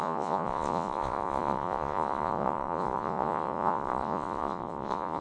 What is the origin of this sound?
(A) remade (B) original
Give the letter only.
A